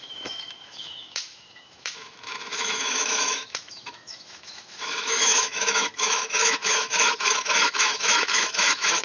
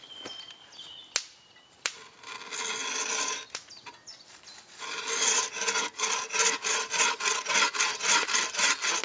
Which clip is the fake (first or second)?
first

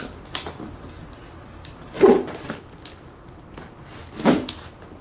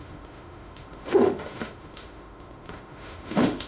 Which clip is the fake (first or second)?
second